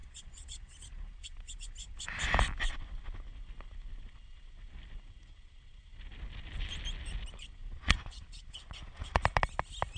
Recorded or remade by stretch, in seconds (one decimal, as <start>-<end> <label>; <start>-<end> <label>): 0.0-1.7 remade; 1.7-7.6 recorded; 7.6-9.2 remade; 9.2-10.0 recorded